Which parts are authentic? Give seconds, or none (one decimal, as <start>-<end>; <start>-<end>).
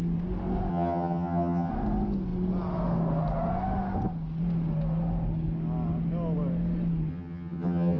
0.0-0.7; 1.7-7.1